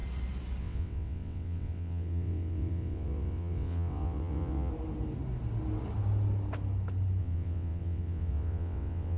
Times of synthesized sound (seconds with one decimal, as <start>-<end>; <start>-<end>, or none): 0.6-4.7; 7.2-9.2